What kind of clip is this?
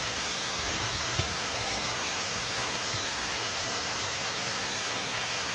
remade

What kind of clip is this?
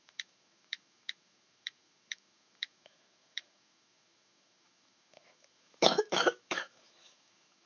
remade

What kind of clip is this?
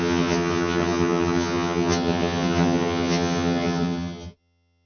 remade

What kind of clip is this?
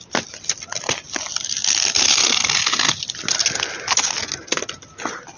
recorded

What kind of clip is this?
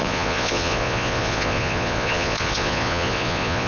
remade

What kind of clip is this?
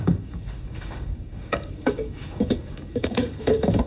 remade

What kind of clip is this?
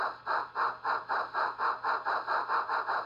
recorded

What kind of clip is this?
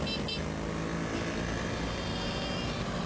recorded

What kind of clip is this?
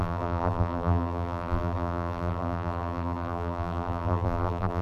remade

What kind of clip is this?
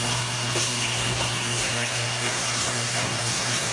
remade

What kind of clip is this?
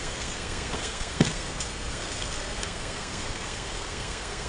remade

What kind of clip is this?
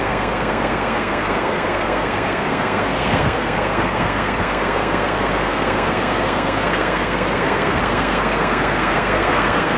remade